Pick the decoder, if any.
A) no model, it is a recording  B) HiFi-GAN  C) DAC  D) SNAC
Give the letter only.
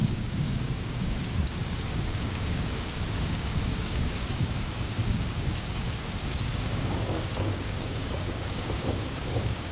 C